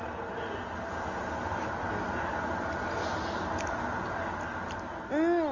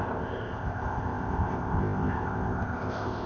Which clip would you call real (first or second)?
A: first